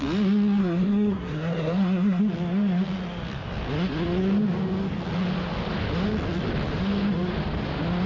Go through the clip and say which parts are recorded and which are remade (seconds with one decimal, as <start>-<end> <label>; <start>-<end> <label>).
0.0-0.6 recorded; 0.6-2.2 remade; 2.2-8.1 recorded